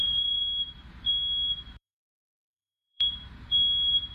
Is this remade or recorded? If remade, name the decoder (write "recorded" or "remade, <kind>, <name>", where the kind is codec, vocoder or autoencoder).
remade, vocoder, BigVGAN v2